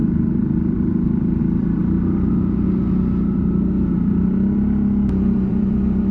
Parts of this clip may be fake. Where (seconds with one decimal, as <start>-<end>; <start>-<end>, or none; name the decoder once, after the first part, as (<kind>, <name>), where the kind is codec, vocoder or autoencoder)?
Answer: 0.0-1.8 (vocoder, BigVGAN v2); 5.5-6.1